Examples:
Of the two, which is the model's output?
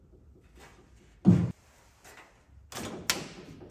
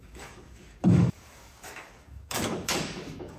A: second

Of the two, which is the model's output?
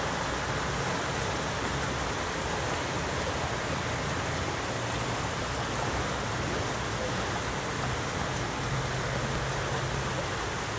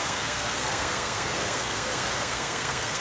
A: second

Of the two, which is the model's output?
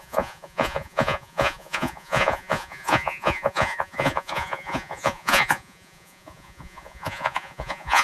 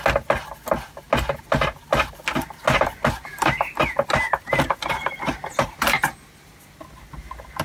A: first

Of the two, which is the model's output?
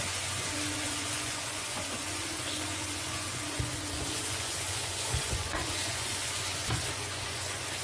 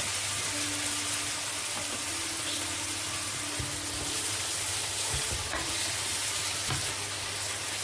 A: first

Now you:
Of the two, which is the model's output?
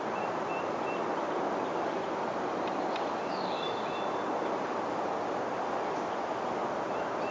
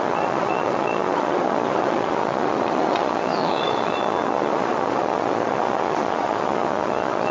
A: second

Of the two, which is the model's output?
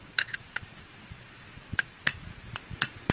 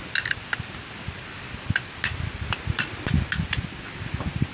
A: first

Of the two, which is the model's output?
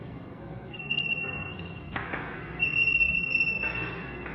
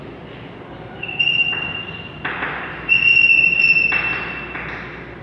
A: first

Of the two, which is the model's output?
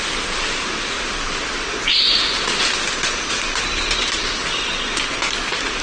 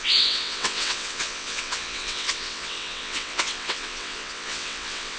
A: second